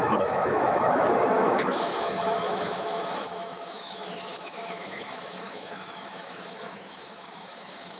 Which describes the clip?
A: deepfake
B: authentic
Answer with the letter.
A